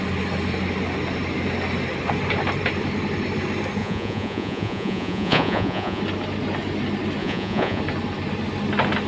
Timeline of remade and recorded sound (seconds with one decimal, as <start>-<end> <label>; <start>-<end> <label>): 0.0-3.8 recorded; 3.8-6.0 remade; 6.0-7.2 recorded; 7.2-7.8 remade; 7.8-9.1 recorded